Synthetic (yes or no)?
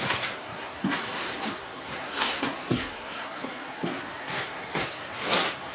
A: yes